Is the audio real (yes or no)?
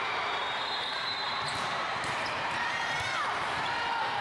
no